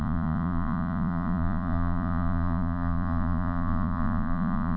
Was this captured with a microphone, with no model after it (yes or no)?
no